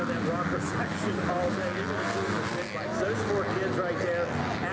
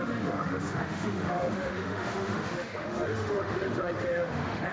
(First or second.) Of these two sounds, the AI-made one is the second